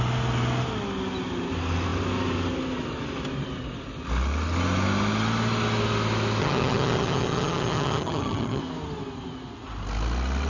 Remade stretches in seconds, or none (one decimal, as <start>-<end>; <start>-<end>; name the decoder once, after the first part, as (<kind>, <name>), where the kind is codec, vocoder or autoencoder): 6.4-8.6 (vocoder, HiFi-GAN)